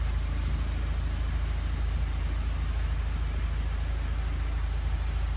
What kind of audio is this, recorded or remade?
recorded